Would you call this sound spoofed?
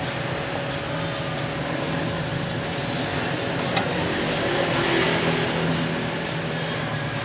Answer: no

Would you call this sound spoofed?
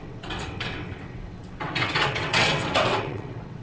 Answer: yes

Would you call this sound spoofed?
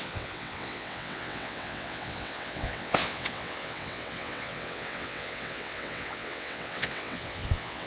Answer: yes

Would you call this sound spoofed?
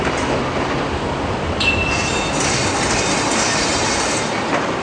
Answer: no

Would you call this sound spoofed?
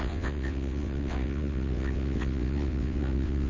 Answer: yes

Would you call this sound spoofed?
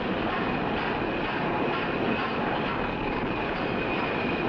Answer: no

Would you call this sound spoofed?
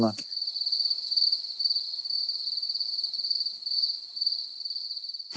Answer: no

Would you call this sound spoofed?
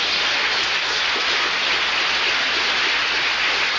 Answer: no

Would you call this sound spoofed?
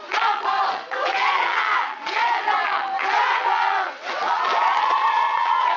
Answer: yes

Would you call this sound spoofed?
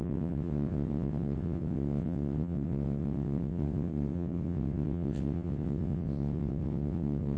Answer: yes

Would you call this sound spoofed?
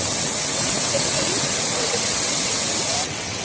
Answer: yes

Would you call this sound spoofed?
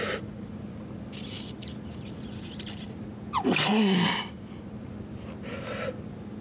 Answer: no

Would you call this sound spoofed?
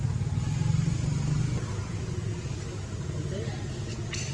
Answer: no